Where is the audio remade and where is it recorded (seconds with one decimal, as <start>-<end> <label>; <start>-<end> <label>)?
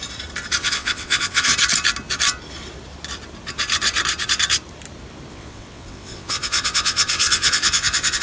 0.0-0.6 recorded; 0.6-1.5 remade; 1.5-5.3 recorded; 5.3-8.2 remade